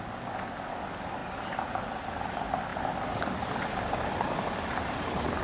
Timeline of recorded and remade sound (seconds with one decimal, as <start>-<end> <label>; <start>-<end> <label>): 0.0-5.4 recorded